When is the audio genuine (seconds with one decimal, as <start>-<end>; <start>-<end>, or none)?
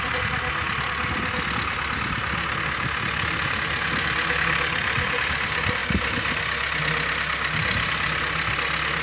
0.0-9.0